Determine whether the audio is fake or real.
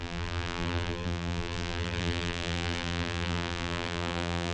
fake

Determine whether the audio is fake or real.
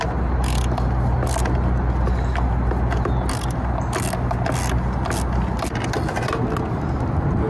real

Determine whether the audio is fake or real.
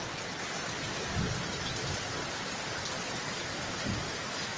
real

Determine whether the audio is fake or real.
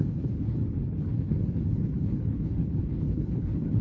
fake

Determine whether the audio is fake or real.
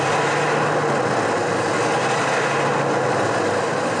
real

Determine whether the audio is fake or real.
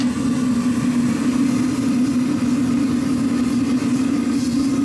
real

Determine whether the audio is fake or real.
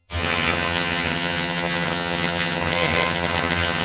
fake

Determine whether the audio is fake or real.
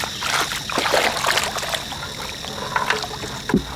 real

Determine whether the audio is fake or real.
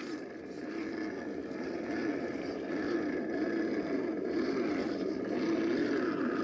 real